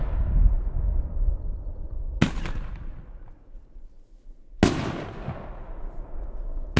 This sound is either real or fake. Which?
real